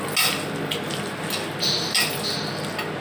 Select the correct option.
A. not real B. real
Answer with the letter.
B